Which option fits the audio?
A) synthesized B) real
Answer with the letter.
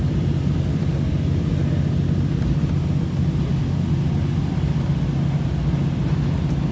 B